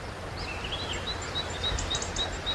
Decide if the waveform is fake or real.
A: real